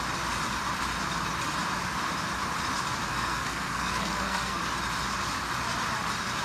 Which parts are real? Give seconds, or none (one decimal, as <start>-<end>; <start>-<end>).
0.0-3.1; 4.6-6.4